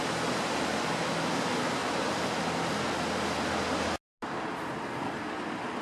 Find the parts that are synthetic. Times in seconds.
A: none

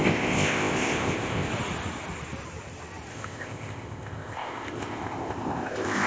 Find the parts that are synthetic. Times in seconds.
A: 0.0-1.5 (codec, ZipCodec); 3.1-6.1

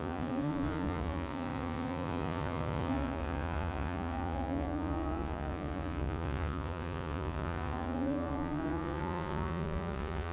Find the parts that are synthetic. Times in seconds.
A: 0.0-10.3 (vocoder, Vocos)

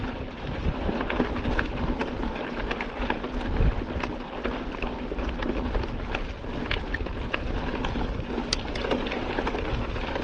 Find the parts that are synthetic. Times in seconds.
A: none